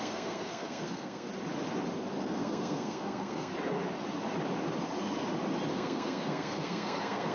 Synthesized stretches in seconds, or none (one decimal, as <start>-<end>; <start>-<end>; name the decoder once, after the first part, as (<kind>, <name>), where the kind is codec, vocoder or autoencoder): 0.0-1.3 (codec, SNAC); 2.2-3.5; 5.7-7.3